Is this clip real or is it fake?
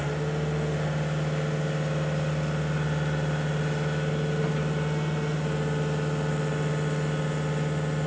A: real